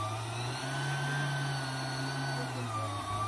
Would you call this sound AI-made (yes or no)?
no